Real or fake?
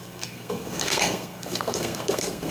fake